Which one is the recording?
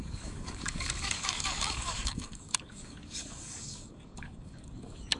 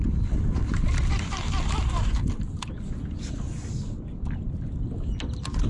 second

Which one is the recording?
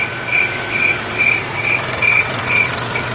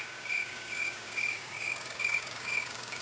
first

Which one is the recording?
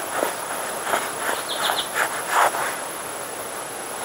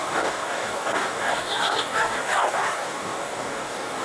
first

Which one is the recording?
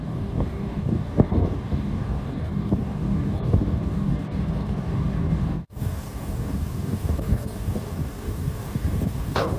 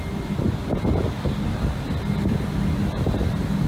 second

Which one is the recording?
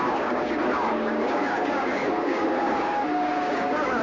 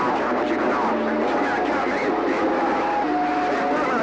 second